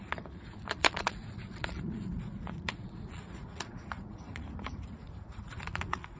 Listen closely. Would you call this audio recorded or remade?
remade